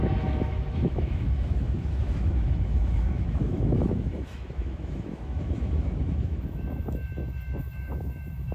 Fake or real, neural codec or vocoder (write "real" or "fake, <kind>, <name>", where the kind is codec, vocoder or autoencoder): fake, autoencoder, DAC-VAE